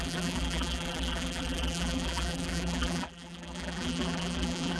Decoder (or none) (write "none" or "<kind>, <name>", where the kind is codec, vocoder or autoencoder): vocoder, BigVGAN v2